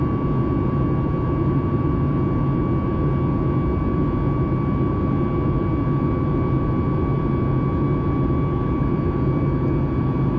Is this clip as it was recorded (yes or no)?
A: yes